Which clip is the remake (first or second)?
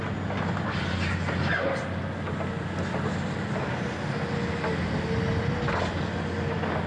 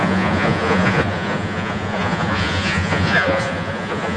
second